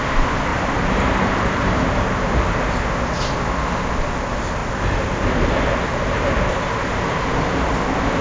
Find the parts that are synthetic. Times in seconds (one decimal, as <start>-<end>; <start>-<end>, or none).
0.5-1.6; 4.6-5.9